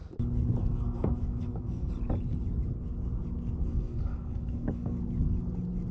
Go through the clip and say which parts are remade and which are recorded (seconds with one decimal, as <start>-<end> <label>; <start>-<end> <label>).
0.0-0.6 recorded; 0.6-1.9 remade; 1.9-3.6 recorded; 3.6-5.0 remade; 5.0-5.9 recorded